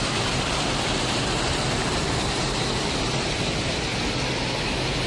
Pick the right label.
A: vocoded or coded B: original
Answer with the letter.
B